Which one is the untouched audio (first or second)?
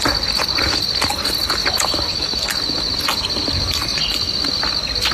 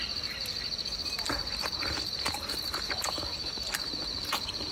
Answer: first